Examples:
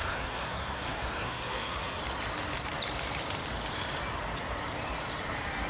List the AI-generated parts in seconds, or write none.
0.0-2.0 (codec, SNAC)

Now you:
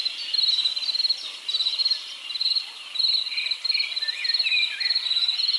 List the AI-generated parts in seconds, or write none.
none

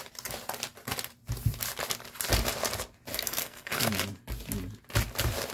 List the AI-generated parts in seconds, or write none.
3.1-3.9 (codec, SNAC)